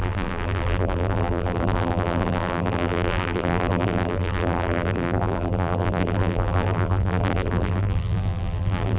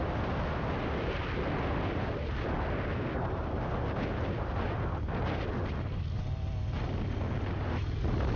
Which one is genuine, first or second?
second